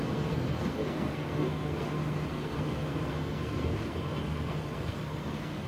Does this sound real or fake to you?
fake